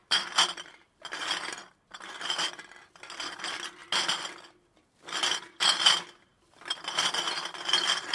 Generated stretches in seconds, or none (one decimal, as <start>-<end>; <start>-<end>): none